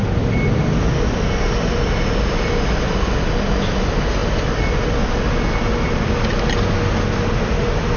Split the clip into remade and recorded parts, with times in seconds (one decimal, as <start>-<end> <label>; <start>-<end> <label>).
0.0-8.0 recorded